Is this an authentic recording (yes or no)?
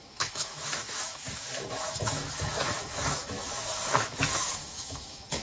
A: no